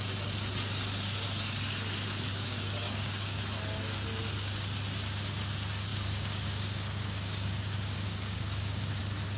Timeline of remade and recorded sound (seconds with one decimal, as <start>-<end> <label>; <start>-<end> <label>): 0.0-2.3 recorded; 2.3-3.4 remade; 3.4-5.9 recorded; 5.9-9.0 remade; 9.0-9.4 recorded

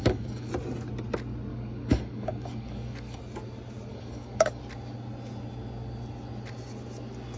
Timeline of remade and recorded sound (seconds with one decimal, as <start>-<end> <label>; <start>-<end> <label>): 0.0-0.5 remade; 0.5-1.5 recorded; 1.5-3.2 remade; 3.2-3.9 recorded; 3.9-4.6 remade; 4.6-7.4 recorded